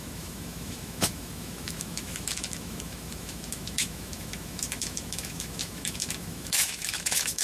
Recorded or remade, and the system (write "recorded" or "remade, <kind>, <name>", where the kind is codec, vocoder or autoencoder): remade, autoencoder, DAC-VAE